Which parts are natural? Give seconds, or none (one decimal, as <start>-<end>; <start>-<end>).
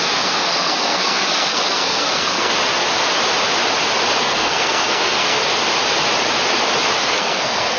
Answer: 2.5-4.2; 5.4-7.0